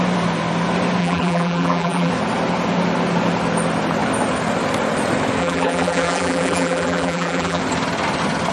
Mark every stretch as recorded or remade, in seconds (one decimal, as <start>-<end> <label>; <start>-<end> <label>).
0.0-1.0 recorded; 1.0-2.1 remade; 2.1-5.4 recorded; 5.4-7.6 remade; 7.6-8.5 recorded